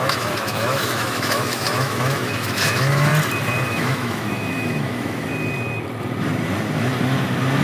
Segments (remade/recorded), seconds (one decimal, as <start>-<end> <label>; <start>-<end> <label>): 0.0-3.1 remade; 3.1-3.7 recorded; 3.7-5.3 remade; 5.3-7.6 recorded